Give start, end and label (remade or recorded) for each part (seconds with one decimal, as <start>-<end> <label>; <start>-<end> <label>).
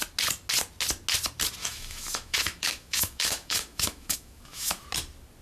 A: 0.0-1.6 recorded; 1.6-4.8 remade; 4.8-5.4 recorded